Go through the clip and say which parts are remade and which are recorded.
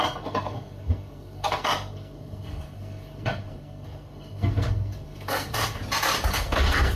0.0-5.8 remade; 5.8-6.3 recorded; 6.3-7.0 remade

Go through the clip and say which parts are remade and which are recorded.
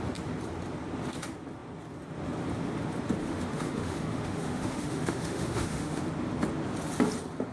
0.0-3.2 recorded; 3.2-6.0 remade; 6.0-7.5 recorded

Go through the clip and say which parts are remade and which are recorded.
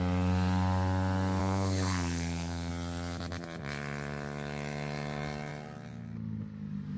0.0-1.4 recorded; 1.4-2.7 remade; 2.7-7.0 recorded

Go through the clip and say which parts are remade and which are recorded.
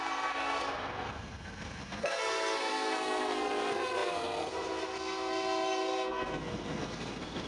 0.0-7.5 remade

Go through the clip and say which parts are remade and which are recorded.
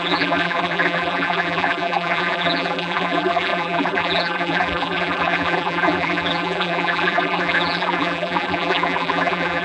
0.0-9.6 remade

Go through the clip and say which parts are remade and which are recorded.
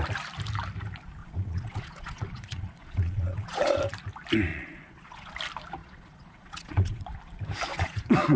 0.0-1.2 recorded; 1.2-3.8 remade; 3.8-4.5 recorded; 4.5-5.3 remade; 5.3-5.8 recorded; 5.8-7.2 remade; 7.2-7.7 recorded; 7.7-8.4 remade